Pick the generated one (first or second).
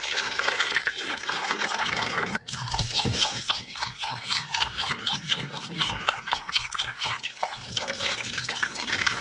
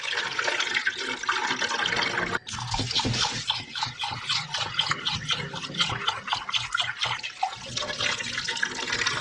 first